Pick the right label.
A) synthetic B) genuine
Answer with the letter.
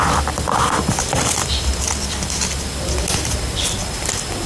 B